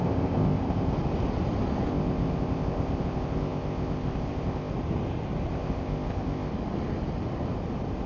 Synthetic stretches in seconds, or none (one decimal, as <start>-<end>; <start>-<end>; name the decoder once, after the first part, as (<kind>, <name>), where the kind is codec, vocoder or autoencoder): 0.0-0.9 (codec, ZipCodec); 1.9-4.7; 5.5-6.5